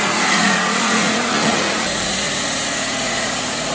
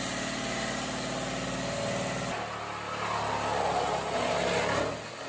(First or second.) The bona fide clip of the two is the second